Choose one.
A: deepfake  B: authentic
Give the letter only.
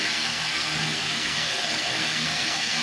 A